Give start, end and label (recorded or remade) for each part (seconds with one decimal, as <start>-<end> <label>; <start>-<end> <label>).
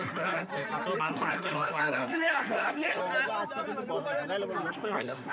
0.0-0.5 remade; 0.5-1.0 recorded; 1.0-3.0 remade; 3.0-4.7 recorded; 4.7-5.3 remade